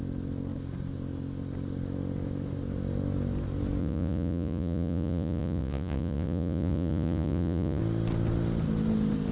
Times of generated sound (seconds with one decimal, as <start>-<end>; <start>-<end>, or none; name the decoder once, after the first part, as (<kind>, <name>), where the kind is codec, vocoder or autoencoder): 3.8-7.8 (vocoder, Vocos)